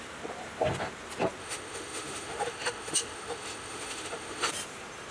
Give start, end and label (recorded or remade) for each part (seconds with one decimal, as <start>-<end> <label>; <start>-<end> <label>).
0.0-1.4 recorded; 1.4-4.5 remade; 4.5-5.1 recorded